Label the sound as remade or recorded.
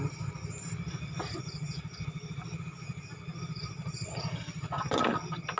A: recorded